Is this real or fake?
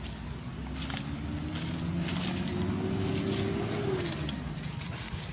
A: real